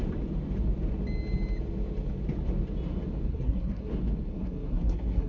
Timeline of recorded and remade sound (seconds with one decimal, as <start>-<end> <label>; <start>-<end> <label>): 0.0-3.3 recorded; 3.3-3.9 remade; 3.9-4.3 recorded; 4.3-5.3 remade